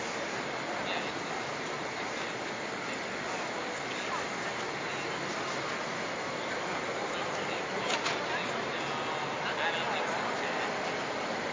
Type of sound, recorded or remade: recorded